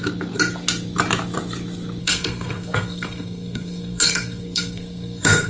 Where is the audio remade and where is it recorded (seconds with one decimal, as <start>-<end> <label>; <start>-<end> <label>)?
0.0-2.0 recorded; 2.0-5.5 remade